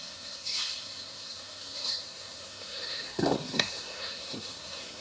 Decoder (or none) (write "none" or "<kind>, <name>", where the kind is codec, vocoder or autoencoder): codec, SNAC